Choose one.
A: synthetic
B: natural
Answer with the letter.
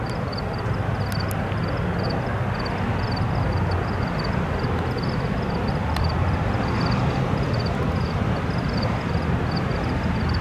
B